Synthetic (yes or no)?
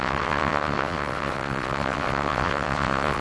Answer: yes